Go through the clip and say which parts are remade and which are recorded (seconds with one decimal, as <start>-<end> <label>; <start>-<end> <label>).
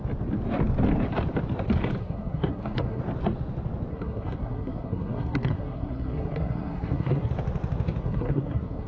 0.0-2.0 recorded; 2.0-3.0 remade; 3.0-3.9 recorded; 3.9-7.3 remade; 7.3-8.0 recorded; 8.0-8.9 remade